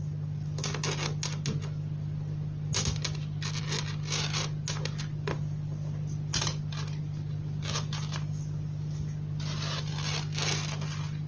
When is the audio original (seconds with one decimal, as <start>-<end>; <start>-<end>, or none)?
0.0-11.3